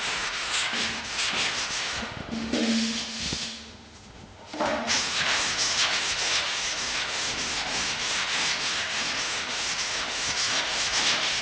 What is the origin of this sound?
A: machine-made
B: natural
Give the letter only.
A